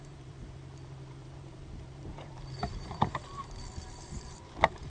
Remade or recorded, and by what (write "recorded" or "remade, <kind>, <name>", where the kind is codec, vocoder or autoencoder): remade, vocoder, BigVGAN v2